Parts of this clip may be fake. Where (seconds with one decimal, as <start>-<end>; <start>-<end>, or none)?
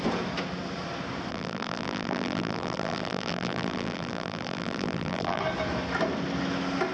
1.3-5.4